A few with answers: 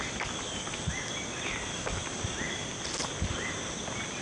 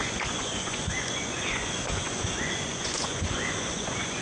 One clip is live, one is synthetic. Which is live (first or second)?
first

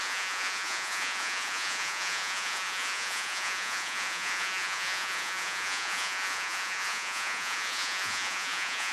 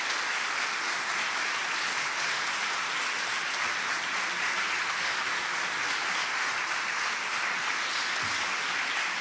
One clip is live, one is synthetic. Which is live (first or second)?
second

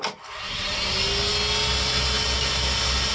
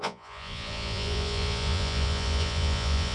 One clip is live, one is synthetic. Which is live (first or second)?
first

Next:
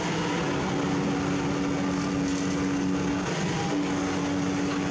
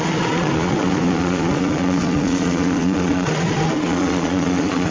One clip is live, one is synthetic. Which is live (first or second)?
first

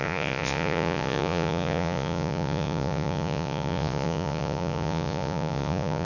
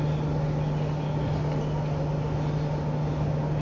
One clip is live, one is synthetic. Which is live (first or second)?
second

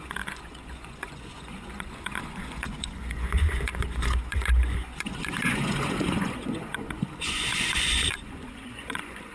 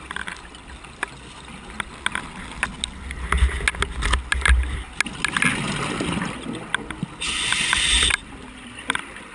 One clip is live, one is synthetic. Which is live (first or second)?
second